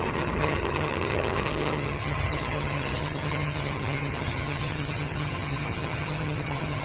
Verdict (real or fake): fake